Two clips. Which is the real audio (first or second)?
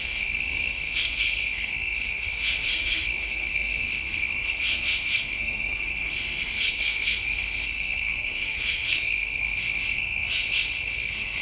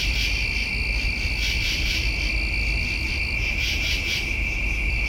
second